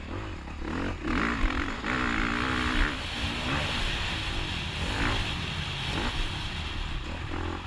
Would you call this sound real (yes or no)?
yes